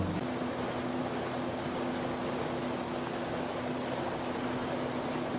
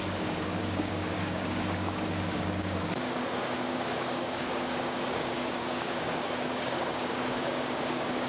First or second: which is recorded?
first